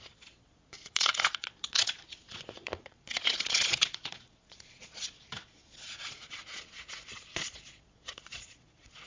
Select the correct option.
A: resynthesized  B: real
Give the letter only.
A